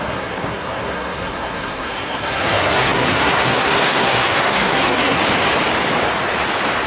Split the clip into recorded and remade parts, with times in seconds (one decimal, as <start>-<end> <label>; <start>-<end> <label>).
0.0-5.2 remade; 5.2-6.9 recorded